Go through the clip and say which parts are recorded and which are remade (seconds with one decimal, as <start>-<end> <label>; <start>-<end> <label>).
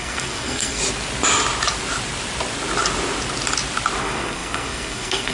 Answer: 0.0-0.8 remade; 0.8-4.0 recorded; 4.0-5.3 remade